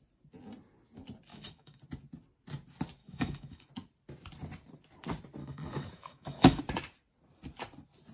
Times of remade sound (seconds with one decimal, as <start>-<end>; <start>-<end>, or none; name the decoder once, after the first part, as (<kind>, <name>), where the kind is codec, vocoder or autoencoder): 1.3-1.8 (autoencoder, DAC-VAE); 3.0-3.7; 5.4-6.6